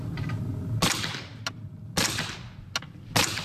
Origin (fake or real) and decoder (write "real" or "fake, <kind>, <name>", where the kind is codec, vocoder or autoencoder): real